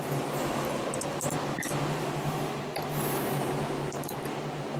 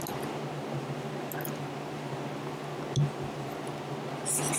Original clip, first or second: second